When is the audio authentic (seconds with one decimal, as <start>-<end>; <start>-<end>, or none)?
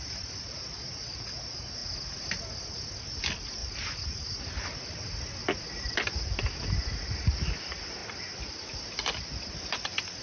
0.0-10.2